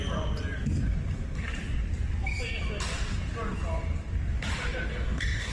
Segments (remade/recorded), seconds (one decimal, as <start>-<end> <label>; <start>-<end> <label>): 0.0-4.9 recorded; 4.9-5.5 remade